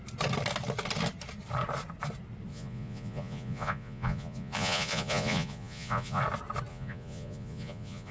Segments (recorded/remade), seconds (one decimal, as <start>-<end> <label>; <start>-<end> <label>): 0.0-2.5 recorded; 2.5-6.2 remade; 6.2-6.7 recorded; 6.7-8.1 remade